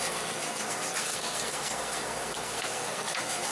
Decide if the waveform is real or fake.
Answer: fake